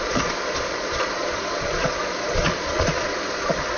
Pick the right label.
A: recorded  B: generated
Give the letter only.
B